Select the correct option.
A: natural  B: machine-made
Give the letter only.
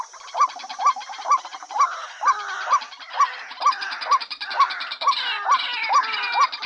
A